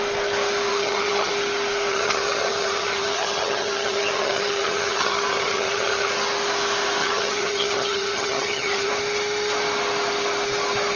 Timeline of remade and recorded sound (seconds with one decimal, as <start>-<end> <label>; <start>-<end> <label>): 0.0-0.7 recorded; 0.7-1.3 remade; 1.3-1.9 recorded; 1.9-6.1 remade; 6.1-7.0 recorded; 7.0-8.9 remade; 8.9-11.0 recorded